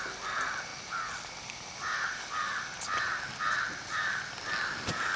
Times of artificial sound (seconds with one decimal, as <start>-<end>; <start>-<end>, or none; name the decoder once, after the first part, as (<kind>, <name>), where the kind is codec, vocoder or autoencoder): none